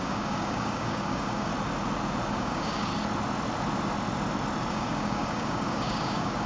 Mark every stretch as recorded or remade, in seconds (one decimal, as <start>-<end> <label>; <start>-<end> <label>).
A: 0.0-1.5 remade; 1.5-2.3 recorded; 2.3-2.9 remade; 2.9-4.7 recorded; 4.7-6.5 remade